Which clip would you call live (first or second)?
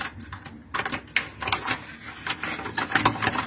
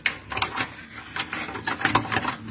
first